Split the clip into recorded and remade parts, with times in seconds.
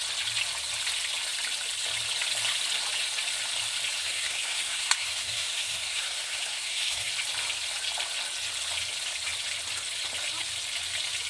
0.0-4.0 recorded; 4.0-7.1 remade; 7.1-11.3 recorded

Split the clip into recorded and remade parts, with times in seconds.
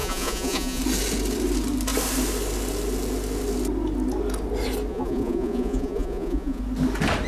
0.0-0.8 remade; 0.8-4.9 recorded; 4.9-6.6 remade; 6.6-7.3 recorded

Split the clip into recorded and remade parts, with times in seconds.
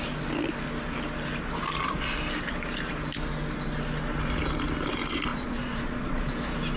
0.0-5.3 recorded; 5.3-6.3 remade; 6.3-6.8 recorded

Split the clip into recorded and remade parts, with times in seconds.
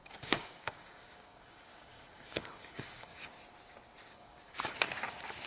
0.0-3.3 remade; 3.3-4.1 recorded; 4.1-4.7 remade; 4.7-5.5 recorded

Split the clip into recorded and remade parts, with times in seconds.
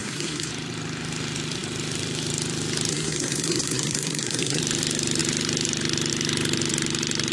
0.0-0.5 remade; 0.5-2.9 recorded; 2.9-4.6 remade; 4.6-7.3 recorded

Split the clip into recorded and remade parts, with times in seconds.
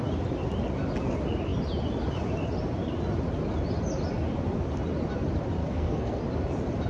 0.0-5.6 recorded; 5.6-6.2 remade; 6.2-6.9 recorded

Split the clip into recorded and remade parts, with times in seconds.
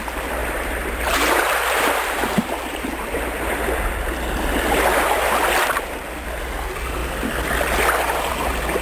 0.0-0.4 recorded; 0.4-3.3 remade; 3.3-8.8 recorded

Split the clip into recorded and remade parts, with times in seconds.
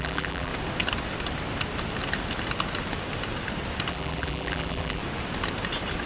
0.0-0.5 remade; 0.5-3.9 recorded; 3.9-5.0 remade; 5.0-6.1 recorded